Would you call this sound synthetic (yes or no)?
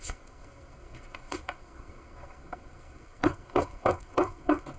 yes